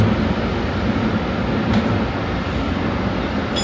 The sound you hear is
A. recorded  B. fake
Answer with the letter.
A